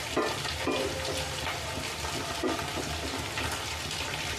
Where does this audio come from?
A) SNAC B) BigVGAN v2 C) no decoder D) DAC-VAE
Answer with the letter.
C